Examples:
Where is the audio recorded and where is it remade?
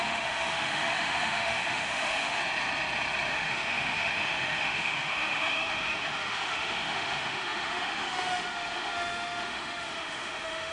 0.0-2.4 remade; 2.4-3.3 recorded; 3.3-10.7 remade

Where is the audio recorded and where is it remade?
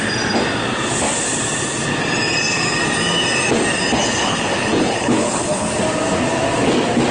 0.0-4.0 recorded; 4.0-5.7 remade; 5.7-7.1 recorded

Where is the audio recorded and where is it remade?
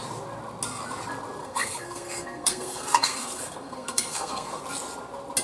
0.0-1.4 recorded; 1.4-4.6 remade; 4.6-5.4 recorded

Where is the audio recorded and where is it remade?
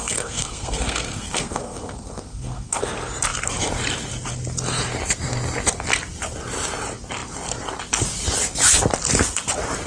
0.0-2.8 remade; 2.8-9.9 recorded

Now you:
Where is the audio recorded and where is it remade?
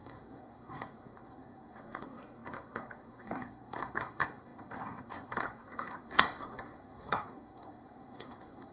0.0-8.7 remade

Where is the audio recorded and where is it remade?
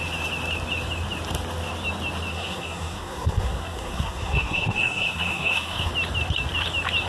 0.0-2.3 recorded; 2.3-5.9 remade; 5.9-7.1 recorded